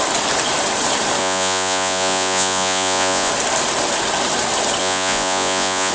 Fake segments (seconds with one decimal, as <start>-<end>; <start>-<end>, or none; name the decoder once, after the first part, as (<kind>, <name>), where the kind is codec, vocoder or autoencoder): 1.2-3.3 (vocoder, Vocos); 4.8-5.9